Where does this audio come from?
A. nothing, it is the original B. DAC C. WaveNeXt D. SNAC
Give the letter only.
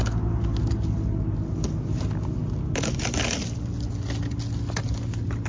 A